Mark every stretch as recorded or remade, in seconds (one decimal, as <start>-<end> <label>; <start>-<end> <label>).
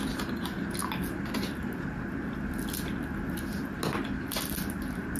0.0-5.2 recorded